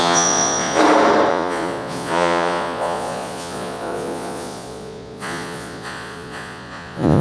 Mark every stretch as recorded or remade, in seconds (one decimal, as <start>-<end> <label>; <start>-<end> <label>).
0.0-0.8 remade; 0.8-1.3 recorded; 1.3-7.2 remade